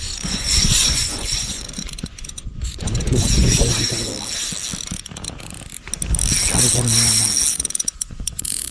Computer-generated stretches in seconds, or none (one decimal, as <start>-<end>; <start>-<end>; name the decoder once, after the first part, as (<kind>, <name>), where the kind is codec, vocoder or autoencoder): 0.0-3.7 (vocoder, Vocos); 7.5-8.7